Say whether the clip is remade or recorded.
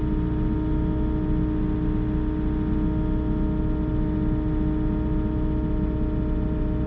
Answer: recorded